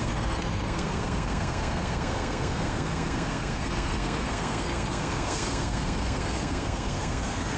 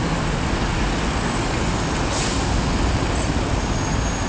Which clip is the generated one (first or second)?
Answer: first